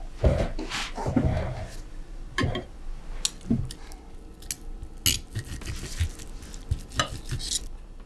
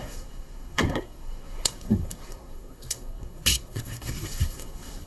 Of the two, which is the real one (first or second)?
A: first